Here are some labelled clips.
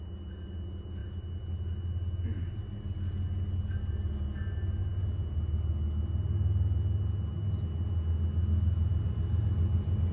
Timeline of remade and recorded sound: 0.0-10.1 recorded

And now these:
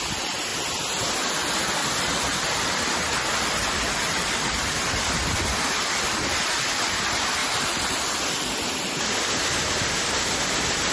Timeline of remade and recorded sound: 0.0-1.8 recorded; 1.8-6.5 remade; 6.5-7.4 recorded; 7.4-8.9 remade; 8.9-10.9 recorded

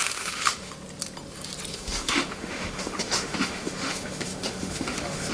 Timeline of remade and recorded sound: 0.0-0.7 remade; 0.7-1.7 recorded; 1.7-5.3 remade

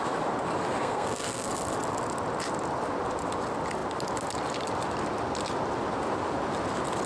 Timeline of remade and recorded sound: 0.0-0.8 recorded; 0.8-1.5 remade; 1.5-7.1 recorded

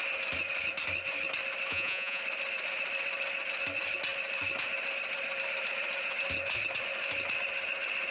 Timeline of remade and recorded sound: 0.0-1.7 recorded; 1.7-2.2 remade; 2.2-8.1 recorded

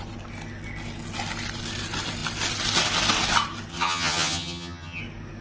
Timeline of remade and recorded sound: 0.0-3.7 recorded; 3.7-5.0 remade; 5.0-5.4 recorded

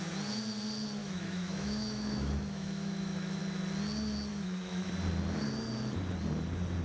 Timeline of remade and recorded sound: 0.0-1.0 recorded; 1.0-3.4 remade; 3.4-4.3 recorded; 4.3-4.9 remade; 4.9-6.8 recorded

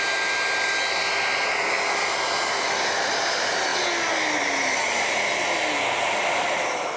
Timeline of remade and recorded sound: 0.0-7.0 recorded